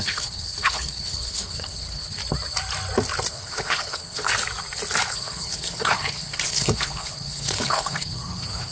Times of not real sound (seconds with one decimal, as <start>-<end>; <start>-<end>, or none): 0.0-2.2; 3.3-4.3; 5.1-8.7